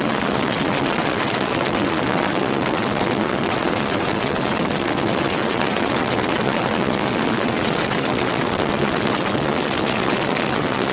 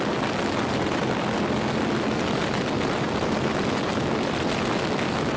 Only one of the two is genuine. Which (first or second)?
second